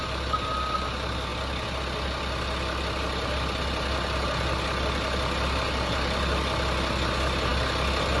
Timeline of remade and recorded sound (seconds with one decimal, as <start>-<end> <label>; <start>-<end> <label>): 0.0-8.2 recorded